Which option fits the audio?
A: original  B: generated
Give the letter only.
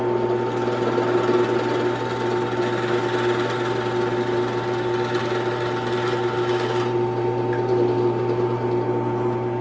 A